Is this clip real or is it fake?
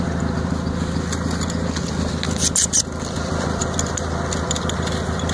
real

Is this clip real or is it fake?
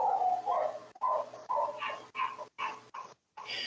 real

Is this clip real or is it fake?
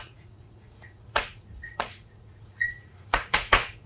fake